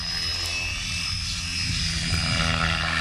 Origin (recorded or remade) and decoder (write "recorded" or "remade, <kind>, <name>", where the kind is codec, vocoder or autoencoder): recorded